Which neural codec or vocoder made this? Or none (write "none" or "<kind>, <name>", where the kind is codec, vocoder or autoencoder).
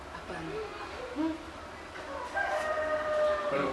none